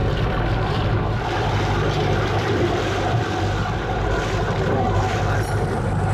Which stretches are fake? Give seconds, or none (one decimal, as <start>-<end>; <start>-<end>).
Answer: none